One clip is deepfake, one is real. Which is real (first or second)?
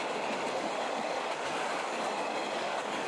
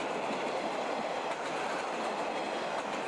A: second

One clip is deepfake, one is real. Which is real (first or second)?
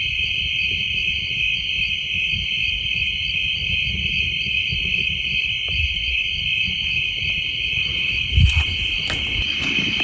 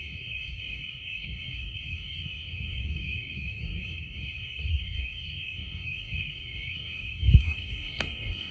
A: first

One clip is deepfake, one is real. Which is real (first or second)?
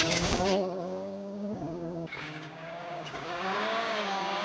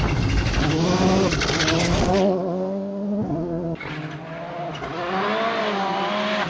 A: second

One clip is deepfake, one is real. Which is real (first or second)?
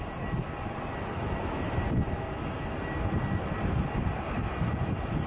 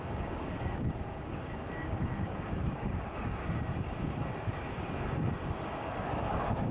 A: first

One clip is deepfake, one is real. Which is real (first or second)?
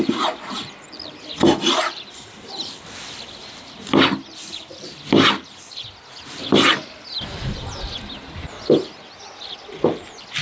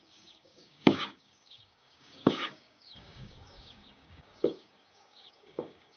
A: first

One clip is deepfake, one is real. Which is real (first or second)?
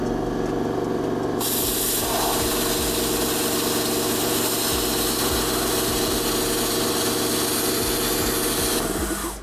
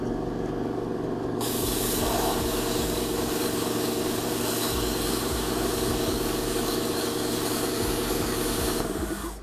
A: first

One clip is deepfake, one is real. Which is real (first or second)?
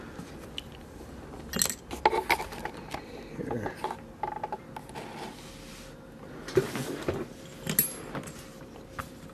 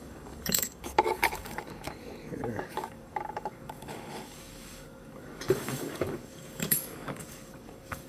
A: first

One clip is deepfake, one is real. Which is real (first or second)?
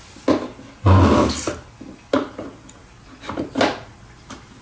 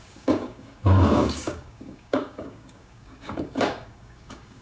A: first